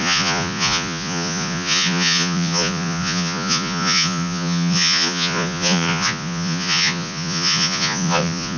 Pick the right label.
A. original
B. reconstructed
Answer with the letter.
B